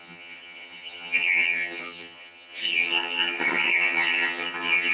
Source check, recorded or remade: remade